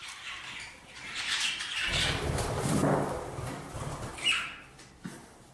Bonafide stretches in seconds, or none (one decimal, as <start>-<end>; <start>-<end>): 2.8-3.5